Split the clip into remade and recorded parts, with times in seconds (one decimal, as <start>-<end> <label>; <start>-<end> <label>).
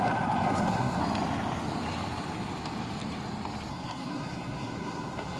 0.0-1.0 remade; 1.0-3.7 recorded; 3.7-5.4 remade